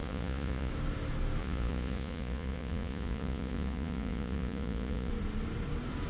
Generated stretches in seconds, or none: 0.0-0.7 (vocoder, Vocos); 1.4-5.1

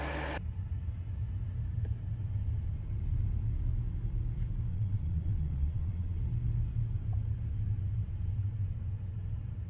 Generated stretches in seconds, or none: 4.7-6.2 (vocoder, Vocos)

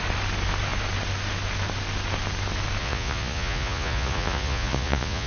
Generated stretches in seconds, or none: 2.8-5.3 (vocoder, Vocos)